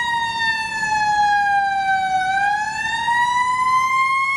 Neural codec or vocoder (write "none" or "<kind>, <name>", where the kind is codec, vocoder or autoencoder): none